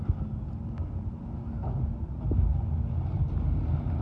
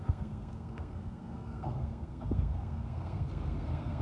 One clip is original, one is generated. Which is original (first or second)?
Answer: first